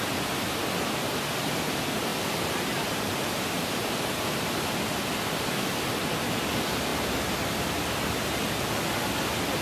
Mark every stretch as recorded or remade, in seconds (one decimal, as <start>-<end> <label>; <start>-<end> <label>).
0.0-2.1 recorded; 2.1-3.1 remade; 3.1-9.6 recorded